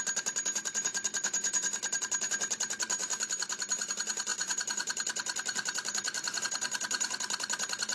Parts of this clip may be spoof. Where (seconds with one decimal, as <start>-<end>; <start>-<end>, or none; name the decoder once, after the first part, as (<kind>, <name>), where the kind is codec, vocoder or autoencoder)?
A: 3.0-3.9 (vocoder, BigVGAN v2); 4.3-6.4